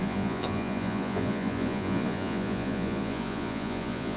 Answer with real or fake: fake